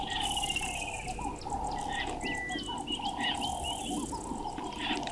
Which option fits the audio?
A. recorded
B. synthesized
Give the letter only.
A